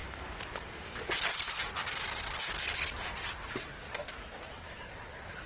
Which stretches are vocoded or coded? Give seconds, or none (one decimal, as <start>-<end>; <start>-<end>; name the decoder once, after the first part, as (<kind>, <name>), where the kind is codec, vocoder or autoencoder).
0.0-1.1 (autoencoder, DAC-VAE); 4.1-4.8